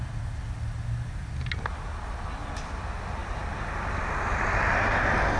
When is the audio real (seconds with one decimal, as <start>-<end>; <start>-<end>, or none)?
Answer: 0.0-5.4